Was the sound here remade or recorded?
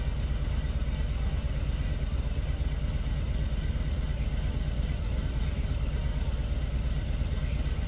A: recorded